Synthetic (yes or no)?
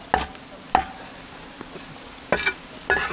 no